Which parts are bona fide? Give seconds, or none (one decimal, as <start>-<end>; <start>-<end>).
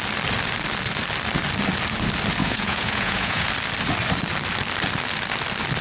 0.0-2.4; 3.5-5.8